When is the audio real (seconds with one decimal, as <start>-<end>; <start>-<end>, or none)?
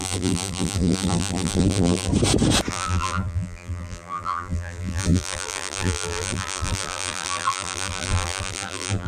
2.1-2.7